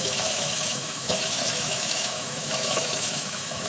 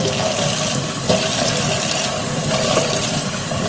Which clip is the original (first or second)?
second